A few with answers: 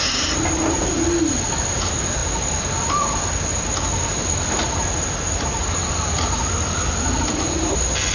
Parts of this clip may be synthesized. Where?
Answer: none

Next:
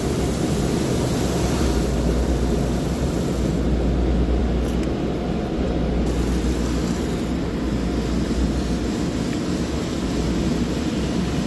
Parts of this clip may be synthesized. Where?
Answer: none

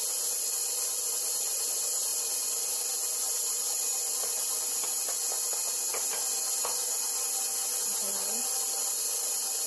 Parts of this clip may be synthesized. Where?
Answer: none

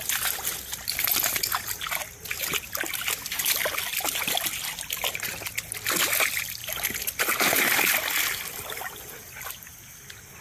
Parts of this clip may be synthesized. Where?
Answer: 2.5-3.7 (vocoder, BigVGAN v2)

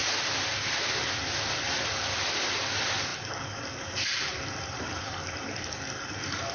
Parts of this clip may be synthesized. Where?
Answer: 0.0-6.5 (vocoder, BigVGAN v2)

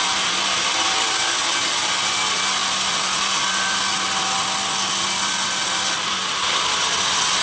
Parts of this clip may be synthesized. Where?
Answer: none